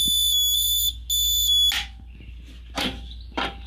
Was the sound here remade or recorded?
recorded